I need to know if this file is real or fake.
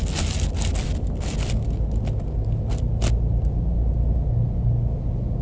real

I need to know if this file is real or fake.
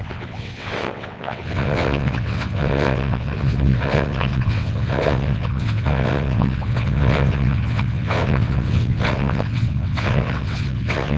fake